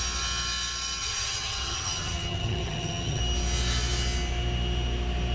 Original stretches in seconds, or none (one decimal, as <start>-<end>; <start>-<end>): 0.0-1.0; 3.2-5.3